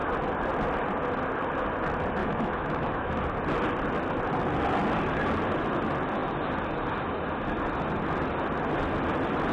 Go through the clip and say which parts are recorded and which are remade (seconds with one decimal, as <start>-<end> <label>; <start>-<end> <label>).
0.0-2.2 recorded; 2.2-3.2 remade; 3.2-9.5 recorded